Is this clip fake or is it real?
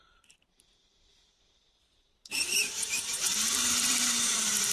fake